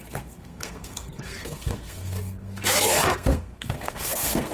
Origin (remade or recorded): remade